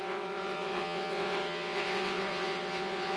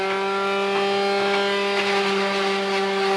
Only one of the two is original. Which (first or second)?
second